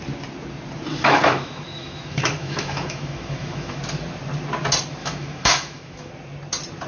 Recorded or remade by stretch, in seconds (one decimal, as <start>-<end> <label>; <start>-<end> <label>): 0.0-0.9 recorded; 0.9-3.8 remade; 3.8-5.0 recorded; 5.0-6.1 remade; 6.1-6.9 recorded